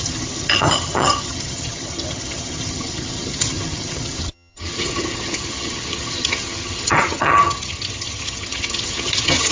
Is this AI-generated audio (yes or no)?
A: yes